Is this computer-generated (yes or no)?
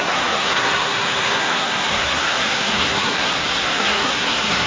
yes